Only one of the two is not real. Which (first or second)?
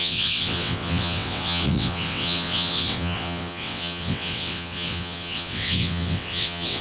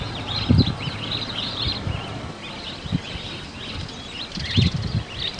first